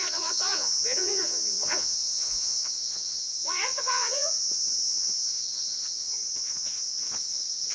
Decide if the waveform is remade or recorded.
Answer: remade